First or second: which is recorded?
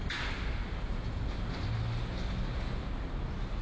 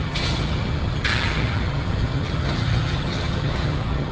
first